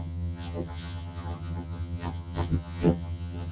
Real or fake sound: fake